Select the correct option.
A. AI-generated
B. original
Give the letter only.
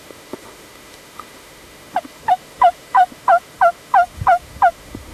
A